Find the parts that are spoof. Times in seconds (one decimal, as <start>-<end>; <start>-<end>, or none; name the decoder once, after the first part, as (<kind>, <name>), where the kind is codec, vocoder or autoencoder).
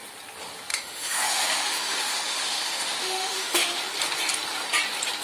0.7-3.8 (autoencoder, DAC-VAE)